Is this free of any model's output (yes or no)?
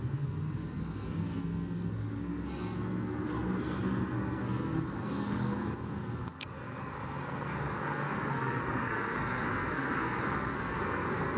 no